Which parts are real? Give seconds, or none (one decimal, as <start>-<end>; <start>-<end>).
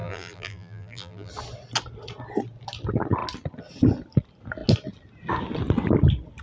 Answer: 1.3-6.4